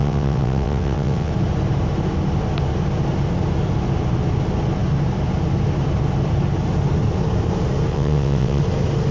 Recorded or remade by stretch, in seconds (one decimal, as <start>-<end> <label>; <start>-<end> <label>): 0.0-1.3 remade; 1.3-7.9 recorded; 7.9-8.6 remade; 8.6-9.1 recorded